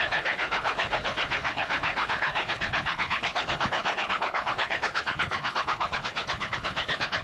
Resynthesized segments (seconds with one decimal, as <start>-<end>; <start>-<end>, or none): 0.0-7.2